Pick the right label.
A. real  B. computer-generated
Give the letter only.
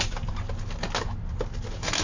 A